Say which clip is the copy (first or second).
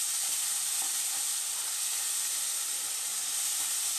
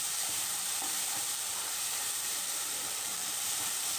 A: second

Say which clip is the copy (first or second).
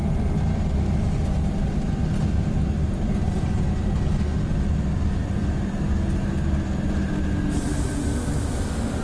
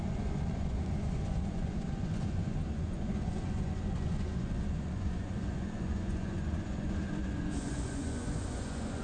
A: second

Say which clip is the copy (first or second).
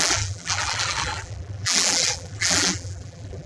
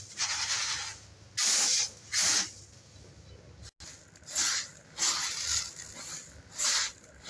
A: first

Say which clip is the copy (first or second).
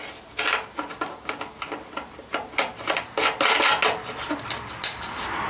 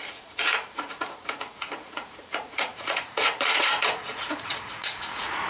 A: second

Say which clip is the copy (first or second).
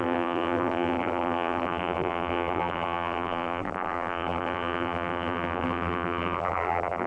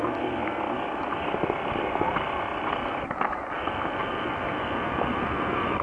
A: first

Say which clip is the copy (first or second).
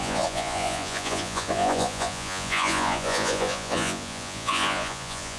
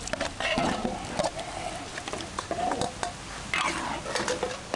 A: first